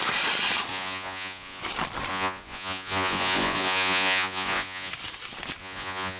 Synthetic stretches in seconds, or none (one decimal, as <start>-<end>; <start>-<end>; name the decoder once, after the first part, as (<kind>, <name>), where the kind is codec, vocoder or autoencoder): 0.7-1.6 (vocoder, Vocos); 2.1-4.9; 5.6-6.2